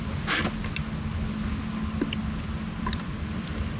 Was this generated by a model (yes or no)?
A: no